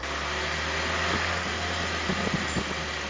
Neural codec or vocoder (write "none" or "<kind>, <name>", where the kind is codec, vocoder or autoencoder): none